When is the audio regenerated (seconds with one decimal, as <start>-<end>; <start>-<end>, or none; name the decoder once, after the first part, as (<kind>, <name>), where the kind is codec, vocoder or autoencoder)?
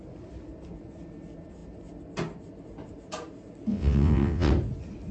3.7-4.5 (vocoder, WaveNeXt)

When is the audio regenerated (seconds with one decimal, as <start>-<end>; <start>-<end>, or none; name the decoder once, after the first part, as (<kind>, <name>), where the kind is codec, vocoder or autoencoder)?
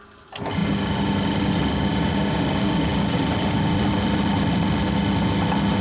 none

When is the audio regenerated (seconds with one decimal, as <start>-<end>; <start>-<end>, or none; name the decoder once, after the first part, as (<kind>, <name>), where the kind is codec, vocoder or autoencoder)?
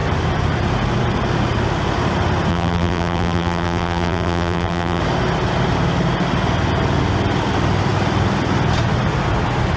2.5-5.0 (vocoder, BigVGAN v2)